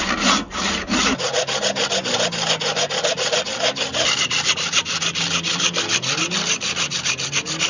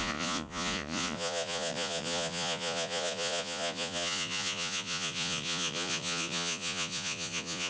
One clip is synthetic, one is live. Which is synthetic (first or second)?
second